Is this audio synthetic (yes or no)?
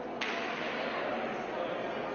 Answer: no